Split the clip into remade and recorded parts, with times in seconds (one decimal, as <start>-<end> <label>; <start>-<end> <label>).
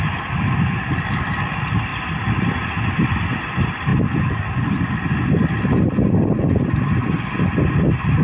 0.0-8.2 recorded